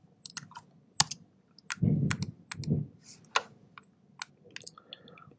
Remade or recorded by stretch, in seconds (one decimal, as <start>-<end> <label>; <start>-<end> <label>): 0.0-5.4 recorded